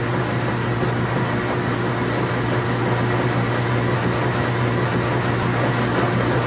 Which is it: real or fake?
real